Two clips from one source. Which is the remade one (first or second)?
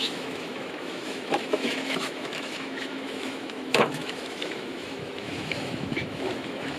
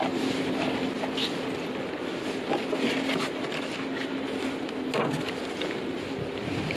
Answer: first